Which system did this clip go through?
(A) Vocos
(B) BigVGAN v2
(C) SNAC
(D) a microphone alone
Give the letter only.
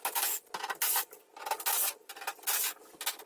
D